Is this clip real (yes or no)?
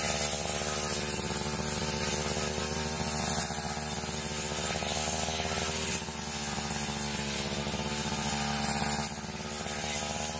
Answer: yes